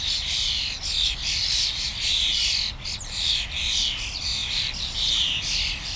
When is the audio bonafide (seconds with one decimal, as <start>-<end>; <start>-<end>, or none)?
0.0-6.0